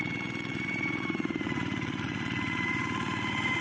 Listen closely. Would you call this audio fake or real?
fake